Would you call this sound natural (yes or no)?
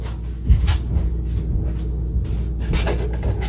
yes